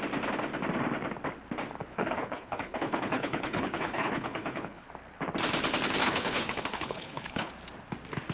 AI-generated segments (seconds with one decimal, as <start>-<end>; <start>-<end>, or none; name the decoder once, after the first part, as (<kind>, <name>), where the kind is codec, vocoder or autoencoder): 1.9-4.9 (codec, HILCodec); 6.0-7.5